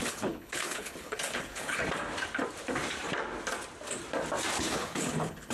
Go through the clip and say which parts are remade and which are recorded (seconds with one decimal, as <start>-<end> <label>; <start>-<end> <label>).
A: 0.0-1.8 remade; 1.8-4.6 recorded; 4.6-5.5 remade